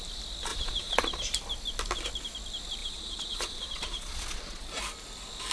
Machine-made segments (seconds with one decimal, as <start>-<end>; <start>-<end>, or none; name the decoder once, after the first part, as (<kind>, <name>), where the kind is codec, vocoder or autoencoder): 0.5-1.2 (vocoder, Vocos); 2.8-4.6